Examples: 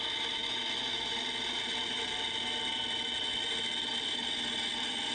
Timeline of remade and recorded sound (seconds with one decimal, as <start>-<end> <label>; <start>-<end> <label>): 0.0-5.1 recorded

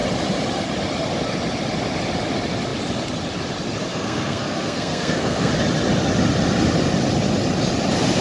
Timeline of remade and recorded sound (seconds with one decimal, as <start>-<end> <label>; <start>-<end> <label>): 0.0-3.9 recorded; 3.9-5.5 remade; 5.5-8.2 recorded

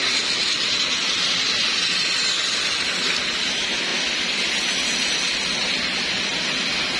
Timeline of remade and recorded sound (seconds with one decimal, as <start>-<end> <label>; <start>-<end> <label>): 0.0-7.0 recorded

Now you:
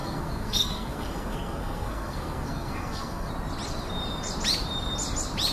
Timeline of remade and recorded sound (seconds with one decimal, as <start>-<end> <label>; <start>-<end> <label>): 0.0-3.3 remade; 3.3-5.5 recorded

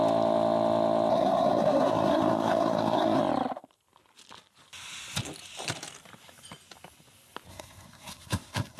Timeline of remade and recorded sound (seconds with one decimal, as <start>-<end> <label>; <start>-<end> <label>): 0.0-1.1 recorded; 1.1-3.2 remade; 3.2-7.5 recorded; 7.5-8.8 remade

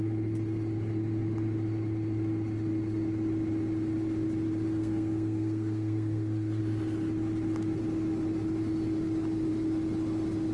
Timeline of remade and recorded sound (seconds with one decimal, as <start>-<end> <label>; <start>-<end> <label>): 0.0-4.8 recorded; 4.8-6.6 remade; 6.6-10.5 recorded